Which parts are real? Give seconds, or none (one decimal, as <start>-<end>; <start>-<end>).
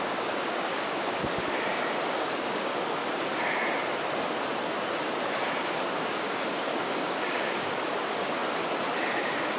1.2-2.1; 3.0-6.0; 8.4-9.1